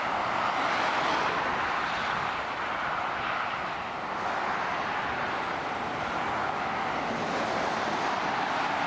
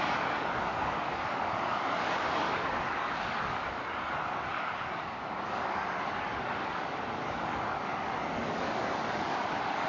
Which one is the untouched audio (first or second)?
first